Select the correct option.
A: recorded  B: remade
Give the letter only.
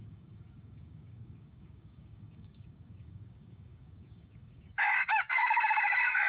B